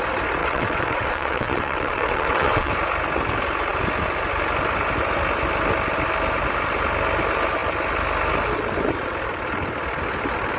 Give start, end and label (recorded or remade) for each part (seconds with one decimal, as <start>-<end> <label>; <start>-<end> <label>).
0.0-0.4 recorded; 0.4-2.7 remade; 2.7-10.6 recorded